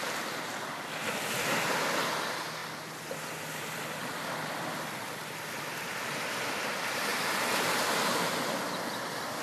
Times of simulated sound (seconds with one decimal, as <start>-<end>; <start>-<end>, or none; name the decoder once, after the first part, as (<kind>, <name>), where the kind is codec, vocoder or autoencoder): none